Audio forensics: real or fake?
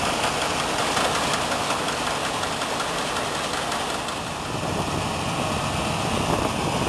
real